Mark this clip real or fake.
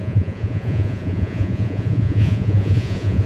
fake